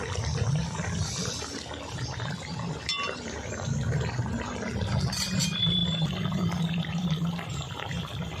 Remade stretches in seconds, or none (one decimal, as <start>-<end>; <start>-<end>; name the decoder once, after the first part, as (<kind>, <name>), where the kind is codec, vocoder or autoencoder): 0.6-1.3 (vocoder, BigVGAN v2); 5.8-7.7

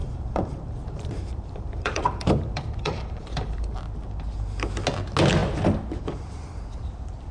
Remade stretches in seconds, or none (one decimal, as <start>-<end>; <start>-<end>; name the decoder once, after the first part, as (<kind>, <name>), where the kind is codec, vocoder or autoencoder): 0.0-3.8 (vocoder, BigVGAN v2)